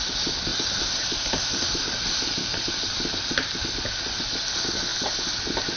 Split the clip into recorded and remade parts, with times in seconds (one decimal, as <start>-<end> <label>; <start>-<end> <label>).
0.0-5.8 recorded